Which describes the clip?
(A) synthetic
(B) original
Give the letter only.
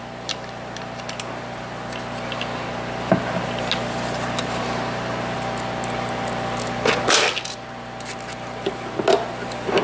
B